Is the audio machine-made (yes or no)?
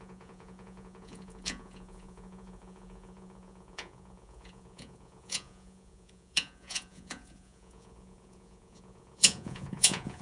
yes